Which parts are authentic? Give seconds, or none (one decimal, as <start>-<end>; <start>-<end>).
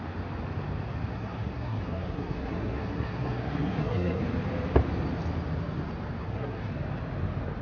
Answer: 0.0-1.1; 4.2-6.2; 6.7-7.6